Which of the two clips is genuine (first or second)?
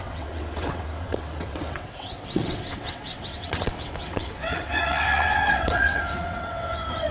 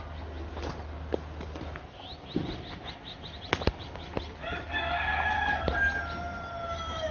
second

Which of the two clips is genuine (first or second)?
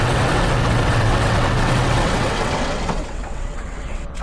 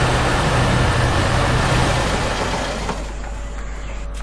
second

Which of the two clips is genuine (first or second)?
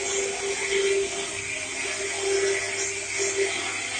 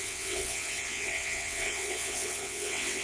first